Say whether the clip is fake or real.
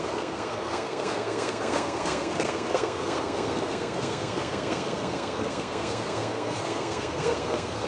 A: fake